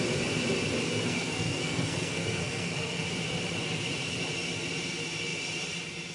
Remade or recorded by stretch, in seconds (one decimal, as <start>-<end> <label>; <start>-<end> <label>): 0.0-0.9 recorded; 0.9-3.0 remade; 3.0-6.1 recorded